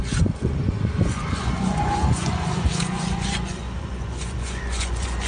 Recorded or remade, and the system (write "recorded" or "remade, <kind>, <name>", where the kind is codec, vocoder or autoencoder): remade, vocoder, Vocos